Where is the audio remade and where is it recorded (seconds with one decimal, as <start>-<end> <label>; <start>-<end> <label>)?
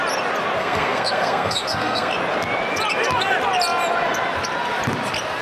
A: 0.0-0.6 recorded; 0.6-2.1 remade; 2.1-5.4 recorded